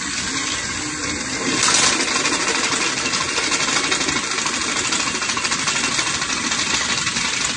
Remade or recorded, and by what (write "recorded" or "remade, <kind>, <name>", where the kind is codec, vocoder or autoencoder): recorded